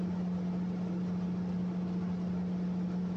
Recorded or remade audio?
recorded